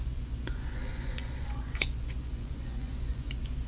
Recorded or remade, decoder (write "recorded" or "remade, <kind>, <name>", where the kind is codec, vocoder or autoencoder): remade, vocoder, Vocos